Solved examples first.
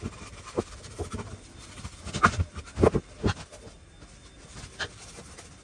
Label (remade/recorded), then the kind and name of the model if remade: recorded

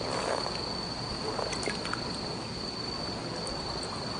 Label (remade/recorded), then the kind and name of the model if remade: recorded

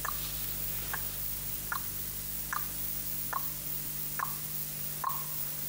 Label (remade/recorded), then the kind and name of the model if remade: recorded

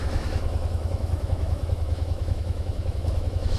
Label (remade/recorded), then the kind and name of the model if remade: remade, autoencoder, DAC-VAE